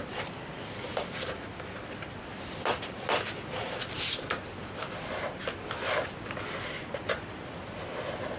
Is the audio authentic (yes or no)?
no